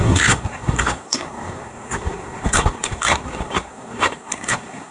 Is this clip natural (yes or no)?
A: no